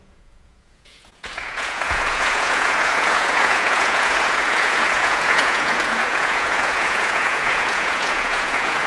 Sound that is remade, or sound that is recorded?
remade